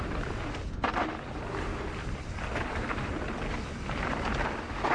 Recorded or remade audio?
recorded